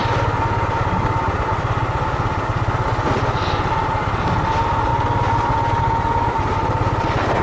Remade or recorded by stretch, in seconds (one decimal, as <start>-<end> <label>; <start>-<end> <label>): 0.0-7.4 recorded